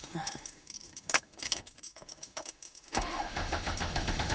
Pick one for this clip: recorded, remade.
remade